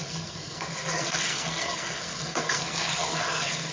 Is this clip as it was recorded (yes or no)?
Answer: no